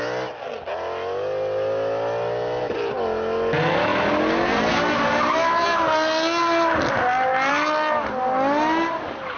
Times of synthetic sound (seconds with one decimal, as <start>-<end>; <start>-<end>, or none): none